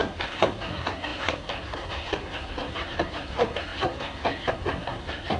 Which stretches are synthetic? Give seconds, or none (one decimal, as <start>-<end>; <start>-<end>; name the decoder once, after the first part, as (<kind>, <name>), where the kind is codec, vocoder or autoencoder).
0.0-5.4 (codec, SNAC)